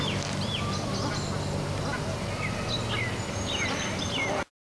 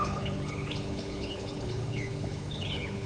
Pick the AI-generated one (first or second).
second